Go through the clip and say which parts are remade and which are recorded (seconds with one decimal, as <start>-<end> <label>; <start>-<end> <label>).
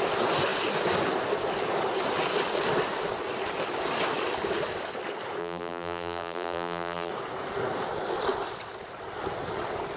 0.0-5.4 recorded; 5.4-7.1 remade; 7.1-10.0 recorded